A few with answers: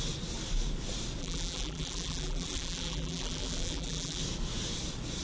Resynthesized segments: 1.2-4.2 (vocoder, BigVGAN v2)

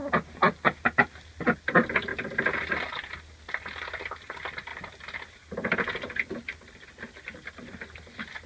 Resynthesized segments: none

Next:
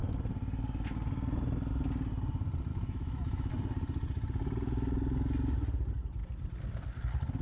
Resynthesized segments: 2.7-3.5 (autoencoder, DAC-VAE)

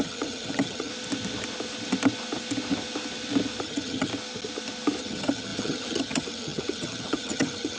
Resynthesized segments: 0.0-0.9 (vocoder, HiFi-GAN); 3.6-4.1; 5.0-7.8

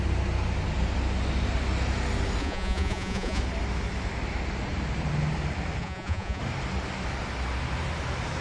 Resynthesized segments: 2.4-3.4 (vocoder, Vocos); 5.8-6.4